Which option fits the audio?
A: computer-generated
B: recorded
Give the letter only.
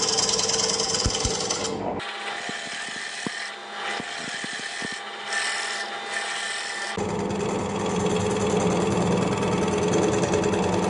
B